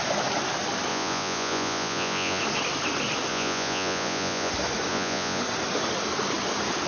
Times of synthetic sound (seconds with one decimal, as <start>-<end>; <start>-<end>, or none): 0.9-2.4; 3.3-4.5; 4.9-5.4